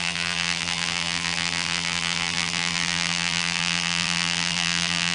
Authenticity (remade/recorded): remade